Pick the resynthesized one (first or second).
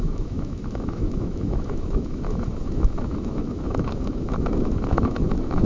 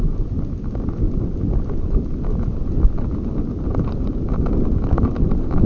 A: first